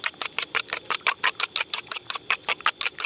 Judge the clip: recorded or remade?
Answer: recorded